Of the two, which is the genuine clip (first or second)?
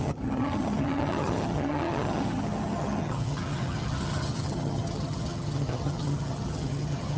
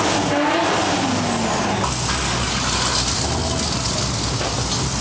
second